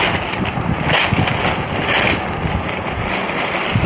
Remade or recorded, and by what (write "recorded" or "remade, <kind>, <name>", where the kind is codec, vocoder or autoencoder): recorded